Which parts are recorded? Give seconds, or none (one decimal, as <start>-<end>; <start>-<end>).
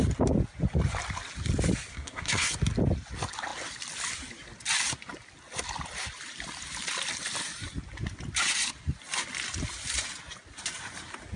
0.0-1.9; 2.5-11.4